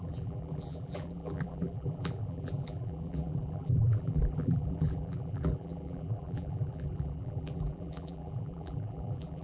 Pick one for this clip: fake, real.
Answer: fake